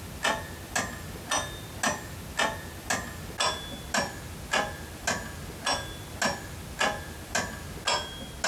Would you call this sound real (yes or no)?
yes